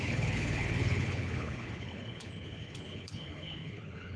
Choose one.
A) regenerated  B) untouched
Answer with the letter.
A